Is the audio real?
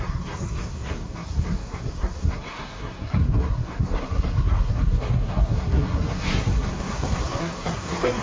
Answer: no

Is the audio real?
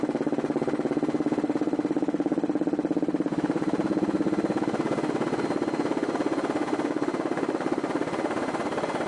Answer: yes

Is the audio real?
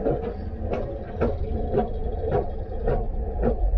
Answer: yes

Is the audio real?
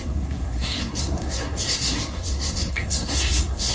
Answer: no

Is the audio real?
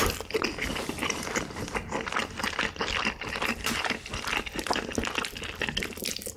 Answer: yes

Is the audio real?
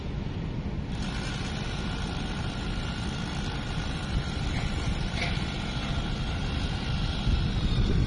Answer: yes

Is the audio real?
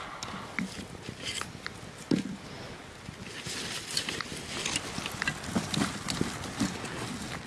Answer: yes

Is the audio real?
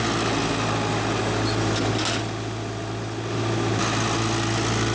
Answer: yes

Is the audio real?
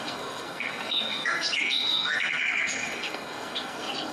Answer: no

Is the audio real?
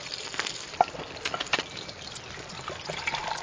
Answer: yes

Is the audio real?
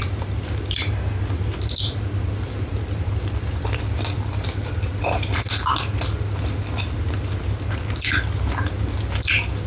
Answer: yes